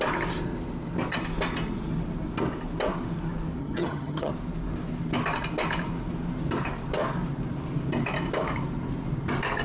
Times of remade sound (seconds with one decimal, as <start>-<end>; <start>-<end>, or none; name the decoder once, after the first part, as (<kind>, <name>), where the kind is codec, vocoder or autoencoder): 3.6-4.3 (vocoder, HiFi-GAN)